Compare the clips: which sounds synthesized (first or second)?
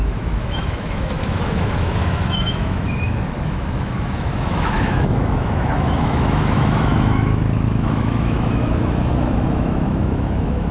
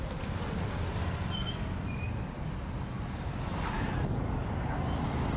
first